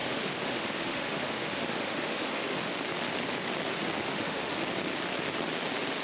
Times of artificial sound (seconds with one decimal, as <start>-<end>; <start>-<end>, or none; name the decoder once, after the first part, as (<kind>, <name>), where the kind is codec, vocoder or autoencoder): 0.0-2.7 (autoencoder, DAC-VAE); 4.0-4.5